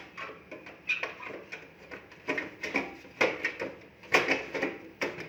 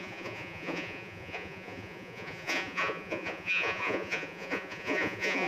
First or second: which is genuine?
first